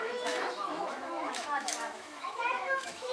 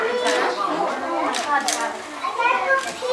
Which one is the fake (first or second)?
first